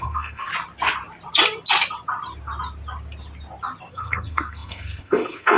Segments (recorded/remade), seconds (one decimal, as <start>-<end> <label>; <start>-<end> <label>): 0.0-0.5 remade; 0.5-3.9 recorded; 3.9-5.6 remade